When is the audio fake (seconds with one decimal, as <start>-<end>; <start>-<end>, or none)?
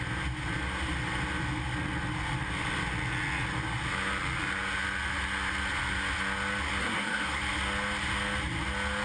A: 6.8-7.4